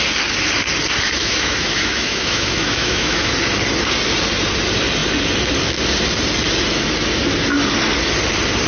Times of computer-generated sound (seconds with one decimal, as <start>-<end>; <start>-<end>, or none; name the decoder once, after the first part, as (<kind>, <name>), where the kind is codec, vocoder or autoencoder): 1.2-3.3 (autoencoder, DAC-VAE)